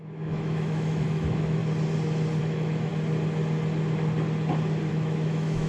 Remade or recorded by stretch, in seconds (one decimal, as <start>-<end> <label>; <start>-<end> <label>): 0.0-1.6 remade; 1.6-2.4 recorded; 2.4-2.9 remade; 2.9-4.9 recorded; 4.9-5.7 remade